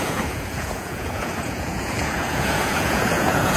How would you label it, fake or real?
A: fake